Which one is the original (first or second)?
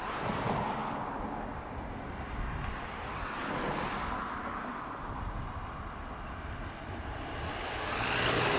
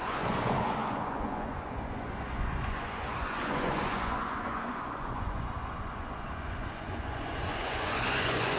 first